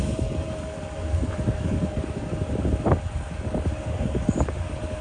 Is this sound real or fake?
fake